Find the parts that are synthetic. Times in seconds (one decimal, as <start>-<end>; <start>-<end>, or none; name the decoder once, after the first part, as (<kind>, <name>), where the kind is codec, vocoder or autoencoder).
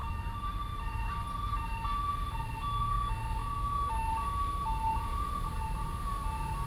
3.4-4.1 (autoencoder, DAC-VAE)